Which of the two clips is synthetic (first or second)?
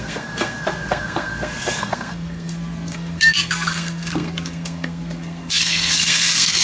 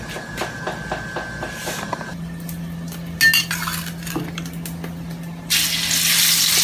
first